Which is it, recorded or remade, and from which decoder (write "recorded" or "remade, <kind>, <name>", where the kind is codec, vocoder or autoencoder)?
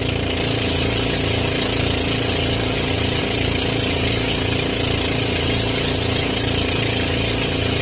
recorded